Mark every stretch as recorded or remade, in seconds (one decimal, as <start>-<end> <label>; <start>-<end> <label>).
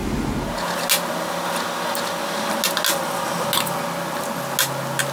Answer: 0.0-5.1 recorded